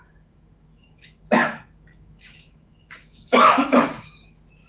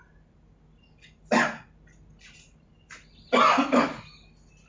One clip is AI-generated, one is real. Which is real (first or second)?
second